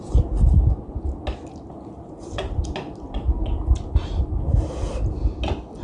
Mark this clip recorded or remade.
recorded